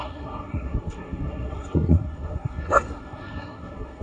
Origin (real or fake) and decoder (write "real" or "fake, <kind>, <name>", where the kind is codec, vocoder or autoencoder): fake, codec, SNAC